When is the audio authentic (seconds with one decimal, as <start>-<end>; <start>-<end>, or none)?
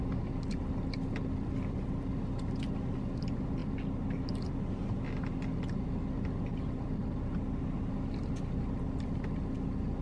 0.0-10.0